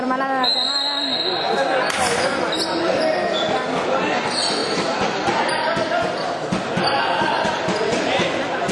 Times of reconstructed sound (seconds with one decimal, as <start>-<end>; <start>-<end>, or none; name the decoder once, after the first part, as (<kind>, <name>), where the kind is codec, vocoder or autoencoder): 4.6-5.4 (vocoder, BigVGAN v2)